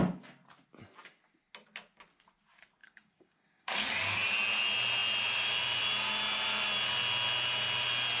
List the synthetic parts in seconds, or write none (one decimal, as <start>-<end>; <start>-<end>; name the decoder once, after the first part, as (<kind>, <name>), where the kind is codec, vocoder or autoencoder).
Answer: 2.8-3.8 (codec, DAC)